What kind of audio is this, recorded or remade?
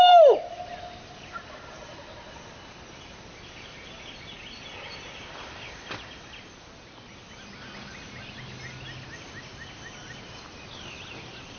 recorded